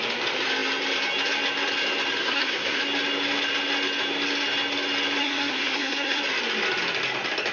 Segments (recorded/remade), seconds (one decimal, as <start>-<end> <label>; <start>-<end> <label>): 0.0-2.2 recorded; 2.2-2.8 remade; 2.8-5.2 recorded; 5.2-6.2 remade; 6.2-7.5 recorded